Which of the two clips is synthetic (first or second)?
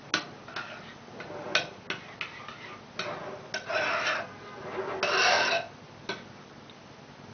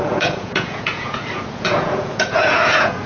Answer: second